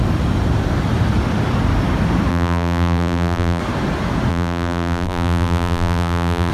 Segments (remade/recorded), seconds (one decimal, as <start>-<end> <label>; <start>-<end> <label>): 0.0-2.3 recorded; 2.3-3.6 remade; 3.6-4.3 recorded; 4.3-6.5 remade